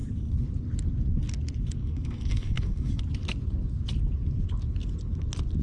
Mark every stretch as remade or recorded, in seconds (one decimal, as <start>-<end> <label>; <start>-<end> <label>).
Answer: 0.0-1.8 recorded; 1.8-3.0 remade; 3.0-5.6 recorded

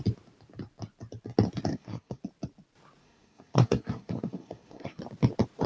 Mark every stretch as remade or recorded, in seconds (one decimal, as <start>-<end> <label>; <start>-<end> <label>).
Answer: 0.0-1.7 recorded; 1.7-2.2 remade; 2.2-3.0 recorded; 3.0-5.0 remade; 5.0-5.7 recorded